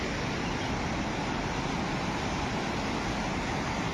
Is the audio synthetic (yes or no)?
no